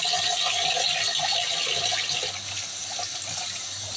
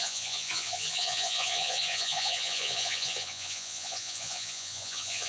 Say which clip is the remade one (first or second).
second